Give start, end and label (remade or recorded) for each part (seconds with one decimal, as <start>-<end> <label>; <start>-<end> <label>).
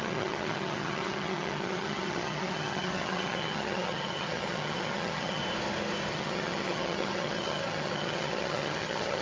0.0-5.4 remade; 5.4-6.1 recorded; 6.1-9.2 remade